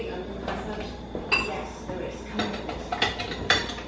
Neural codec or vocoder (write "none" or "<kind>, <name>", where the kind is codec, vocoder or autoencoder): none